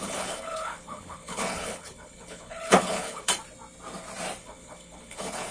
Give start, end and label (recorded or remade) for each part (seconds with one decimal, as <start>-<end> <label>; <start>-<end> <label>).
0.0-3.3 remade; 3.3-4.4 recorded; 4.4-5.5 remade